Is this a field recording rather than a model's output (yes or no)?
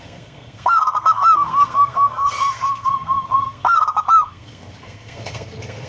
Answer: no